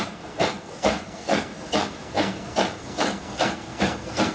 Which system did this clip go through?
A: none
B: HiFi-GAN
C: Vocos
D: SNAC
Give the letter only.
D